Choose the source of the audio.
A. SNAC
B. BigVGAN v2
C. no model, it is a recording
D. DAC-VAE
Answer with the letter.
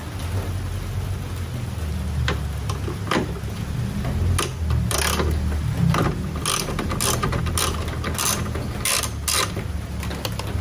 C